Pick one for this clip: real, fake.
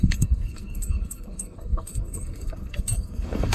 fake